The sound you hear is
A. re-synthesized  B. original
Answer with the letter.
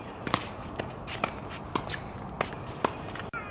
B